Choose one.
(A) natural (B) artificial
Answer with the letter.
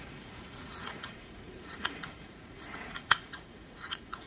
B